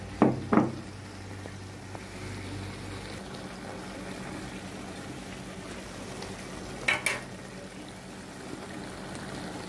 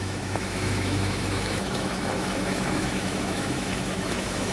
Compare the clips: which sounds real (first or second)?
first